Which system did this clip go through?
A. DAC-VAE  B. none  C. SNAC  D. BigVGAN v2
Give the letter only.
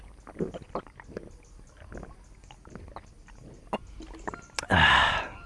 B